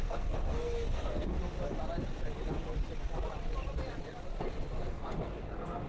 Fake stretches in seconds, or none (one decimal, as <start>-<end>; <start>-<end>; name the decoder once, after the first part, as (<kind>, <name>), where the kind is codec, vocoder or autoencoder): 0.0-1.3 (codec, SNAC); 4.8-5.9